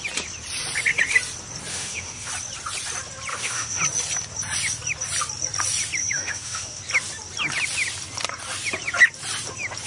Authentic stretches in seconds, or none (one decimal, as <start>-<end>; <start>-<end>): 0.0-1.7; 2.3-3.3; 3.8-6.0; 6.8-9.9